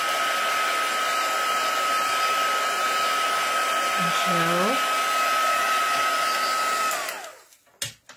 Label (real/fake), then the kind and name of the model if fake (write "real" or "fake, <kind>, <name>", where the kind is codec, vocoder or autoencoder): real